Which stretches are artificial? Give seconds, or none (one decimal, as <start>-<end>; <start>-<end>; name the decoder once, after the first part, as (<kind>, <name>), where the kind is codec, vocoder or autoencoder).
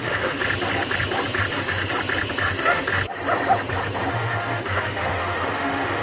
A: 0.0-0.4 (autoencoder, DAC-VAE); 1.5-1.9; 2.5-2.9; 4.1-6.0